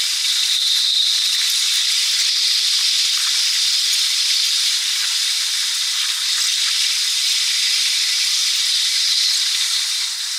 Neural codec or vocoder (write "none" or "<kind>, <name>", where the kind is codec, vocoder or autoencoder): none